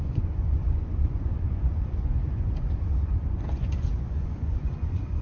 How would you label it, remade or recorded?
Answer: remade